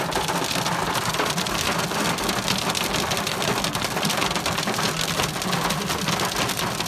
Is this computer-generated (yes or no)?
no